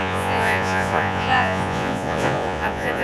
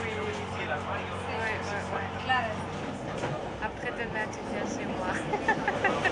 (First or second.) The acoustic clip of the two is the second